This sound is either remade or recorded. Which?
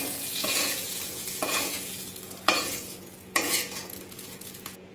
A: remade